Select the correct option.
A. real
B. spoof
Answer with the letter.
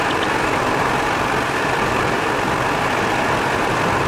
A